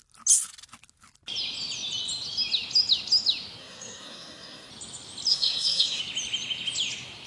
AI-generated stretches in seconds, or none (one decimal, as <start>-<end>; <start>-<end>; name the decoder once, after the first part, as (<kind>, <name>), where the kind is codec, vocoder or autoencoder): 3.6-4.7 (codec, SNAC); 5.3-6.0